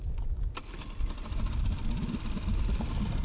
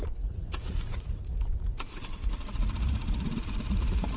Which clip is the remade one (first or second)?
second